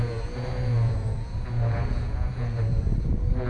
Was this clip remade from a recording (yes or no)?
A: yes